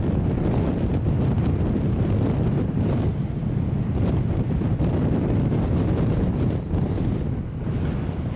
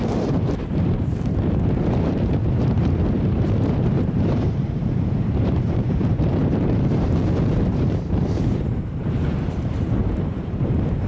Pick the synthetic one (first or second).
second